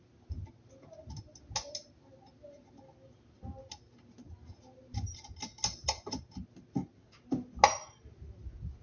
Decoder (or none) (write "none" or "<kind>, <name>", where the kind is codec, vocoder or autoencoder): none